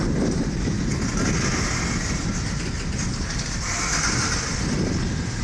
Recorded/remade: recorded